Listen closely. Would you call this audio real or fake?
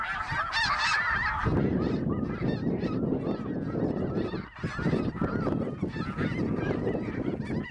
real